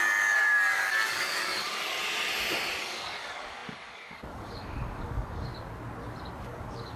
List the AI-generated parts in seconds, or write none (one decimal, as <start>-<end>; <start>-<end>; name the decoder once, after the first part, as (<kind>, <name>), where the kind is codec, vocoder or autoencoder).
0.0-2.0 (codec, DAC); 2.8-5.5; 6.4-7.0